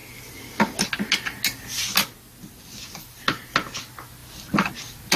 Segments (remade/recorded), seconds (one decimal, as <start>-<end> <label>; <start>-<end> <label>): 0.0-5.2 recorded